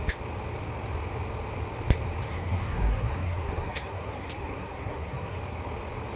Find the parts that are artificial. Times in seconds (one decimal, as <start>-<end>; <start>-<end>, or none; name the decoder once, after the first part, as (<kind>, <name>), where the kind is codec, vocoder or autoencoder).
2.3-5.4 (codec, SNAC)